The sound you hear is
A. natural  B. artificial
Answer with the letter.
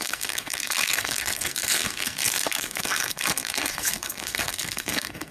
B